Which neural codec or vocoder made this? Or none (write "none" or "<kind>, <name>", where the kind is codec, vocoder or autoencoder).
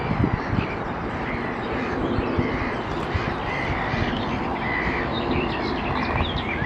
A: none